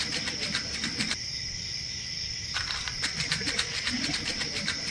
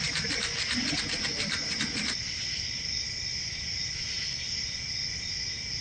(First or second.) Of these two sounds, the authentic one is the second